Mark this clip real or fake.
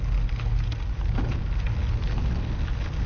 real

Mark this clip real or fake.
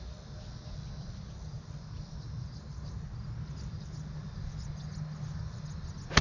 real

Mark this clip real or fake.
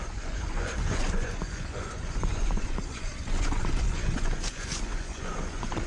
fake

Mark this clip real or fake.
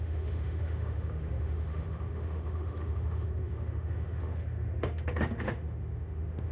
fake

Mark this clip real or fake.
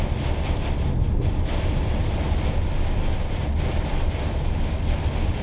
real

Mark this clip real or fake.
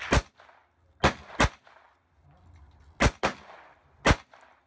real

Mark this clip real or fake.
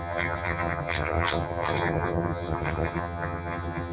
fake